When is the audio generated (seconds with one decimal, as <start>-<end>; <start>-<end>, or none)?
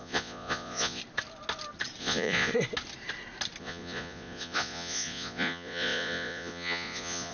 0.0-1.0; 2.0-2.5; 3.6-7.3